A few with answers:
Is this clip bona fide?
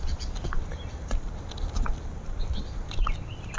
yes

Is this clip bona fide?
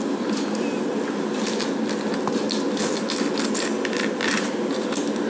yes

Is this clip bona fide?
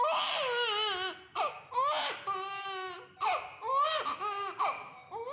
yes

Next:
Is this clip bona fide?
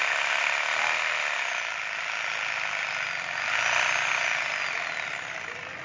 yes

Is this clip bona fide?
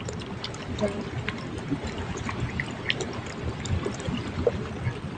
yes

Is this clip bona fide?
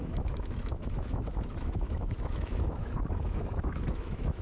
no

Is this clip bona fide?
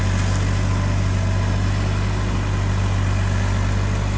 yes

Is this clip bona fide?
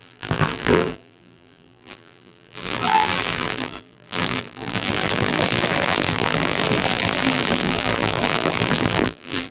no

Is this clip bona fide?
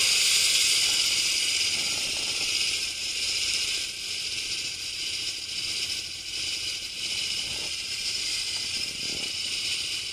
yes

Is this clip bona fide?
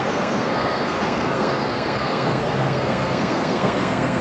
no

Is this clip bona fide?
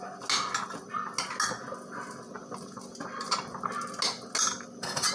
yes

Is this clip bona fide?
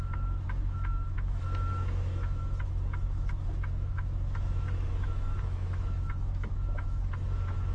no